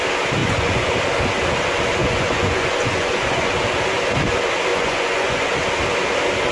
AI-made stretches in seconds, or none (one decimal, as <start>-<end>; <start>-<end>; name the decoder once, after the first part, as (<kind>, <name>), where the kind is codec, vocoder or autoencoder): 0.4-0.9 (vocoder, Vocos); 2.0-3.5; 4.7-5.5

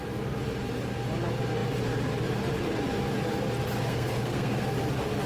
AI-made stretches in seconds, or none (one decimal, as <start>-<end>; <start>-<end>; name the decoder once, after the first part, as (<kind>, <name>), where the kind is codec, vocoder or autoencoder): 3.9-4.7 (codec, SNAC)

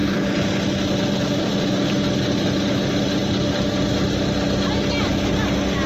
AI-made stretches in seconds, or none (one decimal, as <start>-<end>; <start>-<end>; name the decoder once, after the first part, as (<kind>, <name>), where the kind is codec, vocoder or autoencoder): none

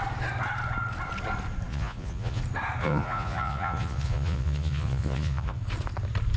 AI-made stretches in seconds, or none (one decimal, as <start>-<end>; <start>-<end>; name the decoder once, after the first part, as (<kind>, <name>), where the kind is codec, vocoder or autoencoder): 1.7-2.4 (vocoder, Vocos); 2.8-5.6

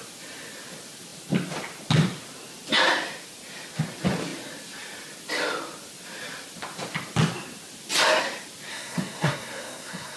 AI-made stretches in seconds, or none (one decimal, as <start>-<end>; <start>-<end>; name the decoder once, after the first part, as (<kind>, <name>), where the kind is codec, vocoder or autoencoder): 8.7-10.2 (codec, SNAC)

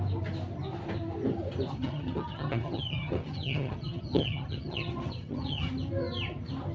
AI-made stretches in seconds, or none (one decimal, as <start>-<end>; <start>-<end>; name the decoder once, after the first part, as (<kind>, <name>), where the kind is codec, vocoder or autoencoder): 1.7-5.7 (vocoder, HiFi-GAN)